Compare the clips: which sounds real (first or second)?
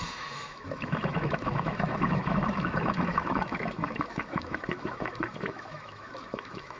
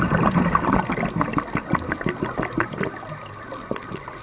second